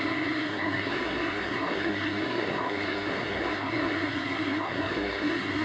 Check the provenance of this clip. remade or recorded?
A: remade